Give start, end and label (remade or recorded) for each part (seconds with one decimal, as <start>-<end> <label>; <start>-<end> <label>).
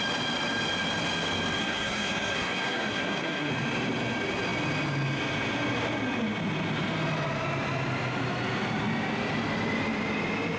0.0-1.6 recorded; 1.6-3.5 remade; 3.5-10.6 recorded